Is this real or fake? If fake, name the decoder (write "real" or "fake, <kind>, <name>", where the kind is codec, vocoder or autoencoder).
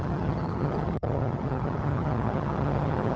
fake, vocoder, HiFi-GAN